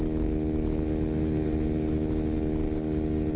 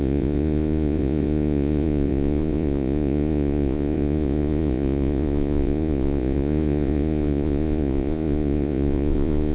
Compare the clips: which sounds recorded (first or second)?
first